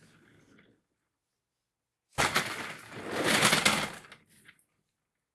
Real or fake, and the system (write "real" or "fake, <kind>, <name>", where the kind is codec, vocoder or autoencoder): real